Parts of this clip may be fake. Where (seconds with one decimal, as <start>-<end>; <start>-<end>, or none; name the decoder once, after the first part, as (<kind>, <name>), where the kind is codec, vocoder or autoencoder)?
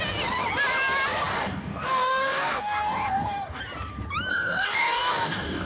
1.3-3.6 (codec, DAC); 4.3-5.7